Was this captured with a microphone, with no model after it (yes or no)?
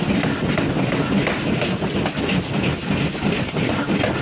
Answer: yes